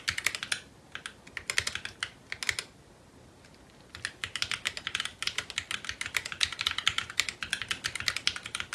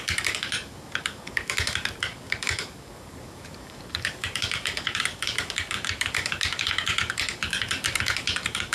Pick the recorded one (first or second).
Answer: first